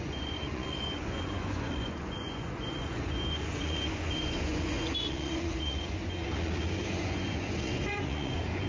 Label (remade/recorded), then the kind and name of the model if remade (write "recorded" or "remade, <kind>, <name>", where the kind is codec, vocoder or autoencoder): remade, vocoder, Vocos